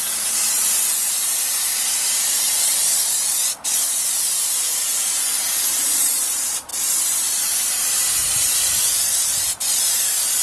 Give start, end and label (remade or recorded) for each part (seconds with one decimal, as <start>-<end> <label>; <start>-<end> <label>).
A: 0.0-2.7 remade; 2.7-3.5 recorded; 3.5-5.3 remade; 5.3-5.8 recorded; 5.8-10.4 remade